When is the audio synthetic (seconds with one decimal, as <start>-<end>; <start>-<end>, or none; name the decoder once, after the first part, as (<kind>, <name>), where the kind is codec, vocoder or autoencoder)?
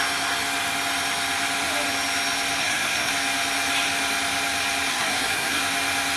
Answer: 2.6-3.1 (codec, SNAC); 4.9-5.6